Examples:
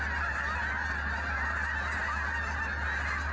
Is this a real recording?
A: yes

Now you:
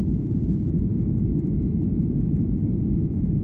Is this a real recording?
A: no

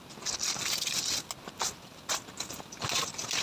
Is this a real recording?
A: yes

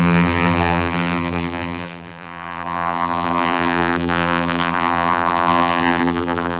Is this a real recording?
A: no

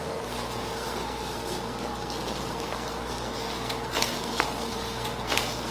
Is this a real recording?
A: no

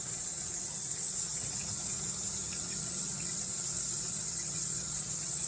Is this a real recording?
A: no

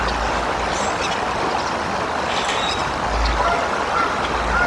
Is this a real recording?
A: yes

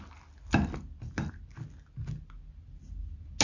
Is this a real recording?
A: yes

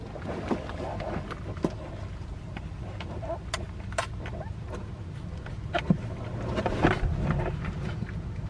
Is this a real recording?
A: yes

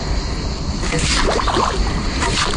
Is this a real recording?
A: yes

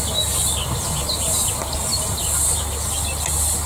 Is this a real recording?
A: yes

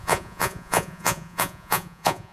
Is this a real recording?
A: no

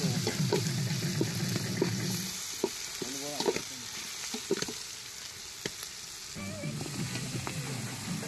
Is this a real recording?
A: yes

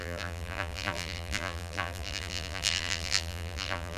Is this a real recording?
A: no